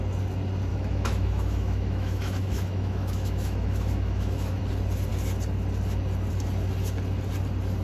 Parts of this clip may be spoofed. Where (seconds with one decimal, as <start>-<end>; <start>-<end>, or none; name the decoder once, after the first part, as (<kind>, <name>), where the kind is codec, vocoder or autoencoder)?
0.7-4.6 (autoencoder, DAC-VAE)